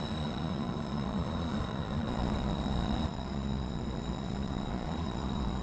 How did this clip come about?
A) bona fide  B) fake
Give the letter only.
B